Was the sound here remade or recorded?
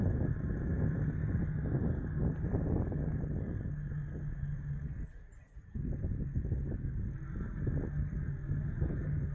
recorded